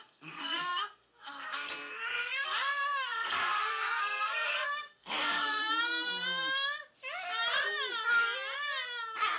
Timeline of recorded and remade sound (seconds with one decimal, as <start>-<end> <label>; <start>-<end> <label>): 0.0-5.6 remade; 5.6-9.4 recorded